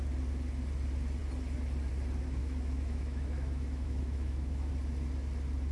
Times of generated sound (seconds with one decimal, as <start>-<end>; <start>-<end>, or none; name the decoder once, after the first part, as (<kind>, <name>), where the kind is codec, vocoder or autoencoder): 2.4-4.7 (autoencoder, DAC-VAE)